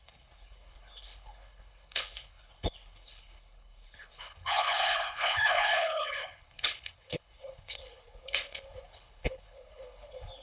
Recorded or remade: remade